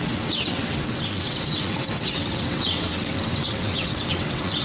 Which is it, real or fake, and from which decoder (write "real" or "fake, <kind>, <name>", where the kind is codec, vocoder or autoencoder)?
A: fake, vocoder, WaveNeXt